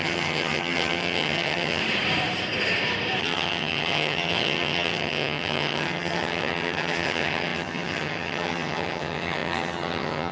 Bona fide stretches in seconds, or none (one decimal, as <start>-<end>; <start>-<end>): 1.8-3.2